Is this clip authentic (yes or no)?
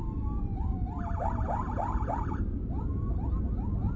no